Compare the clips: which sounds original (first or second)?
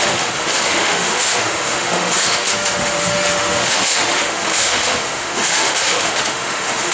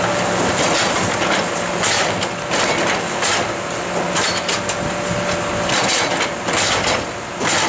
second